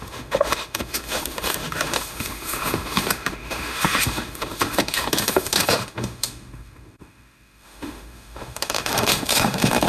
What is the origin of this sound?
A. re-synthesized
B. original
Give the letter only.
A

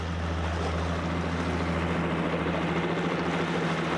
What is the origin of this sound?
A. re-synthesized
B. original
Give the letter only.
B